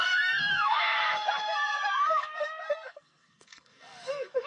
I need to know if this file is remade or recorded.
remade